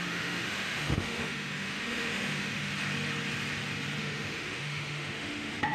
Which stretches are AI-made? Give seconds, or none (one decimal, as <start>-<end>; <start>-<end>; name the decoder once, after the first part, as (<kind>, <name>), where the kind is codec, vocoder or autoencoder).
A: 0.0-2.7 (autoencoder, DAC-VAE); 4.0-5.7